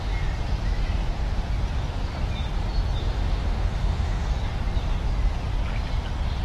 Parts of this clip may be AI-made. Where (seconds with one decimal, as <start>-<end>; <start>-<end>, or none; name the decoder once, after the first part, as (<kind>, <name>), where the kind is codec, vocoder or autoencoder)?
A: 3.0-4.3 (autoencoder, DAC-VAE)